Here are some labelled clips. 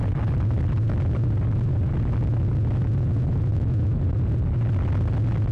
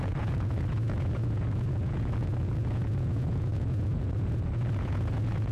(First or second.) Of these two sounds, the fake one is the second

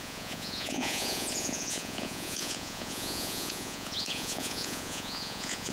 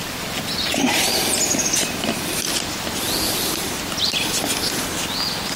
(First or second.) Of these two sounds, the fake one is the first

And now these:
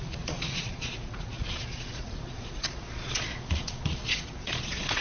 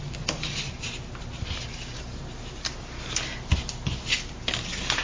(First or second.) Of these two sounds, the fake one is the first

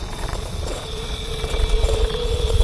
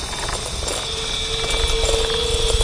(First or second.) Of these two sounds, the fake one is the first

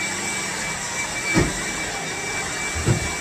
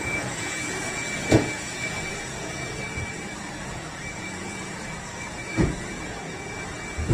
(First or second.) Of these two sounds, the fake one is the second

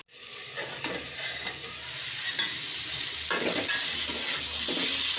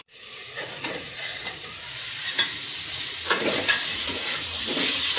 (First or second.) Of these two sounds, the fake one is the second